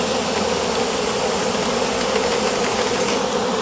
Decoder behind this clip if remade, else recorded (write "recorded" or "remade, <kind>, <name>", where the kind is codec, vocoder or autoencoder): recorded